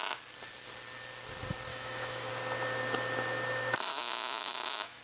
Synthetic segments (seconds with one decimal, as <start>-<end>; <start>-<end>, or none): 1.7-2.3; 3.9-5.0